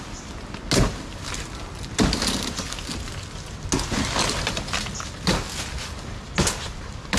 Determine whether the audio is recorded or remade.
recorded